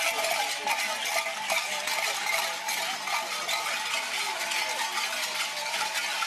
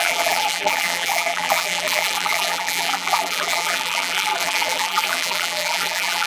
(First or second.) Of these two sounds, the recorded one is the first